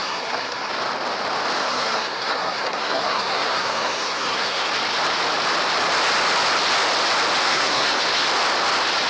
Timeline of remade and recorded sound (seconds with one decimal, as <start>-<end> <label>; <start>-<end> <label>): 0.0-0.7 remade; 0.7-1.6 recorded; 1.6-4.7 remade; 4.7-7.4 recorded; 7.4-8.0 remade; 8.0-9.1 recorded